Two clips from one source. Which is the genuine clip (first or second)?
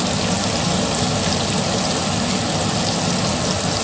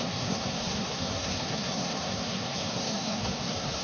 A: first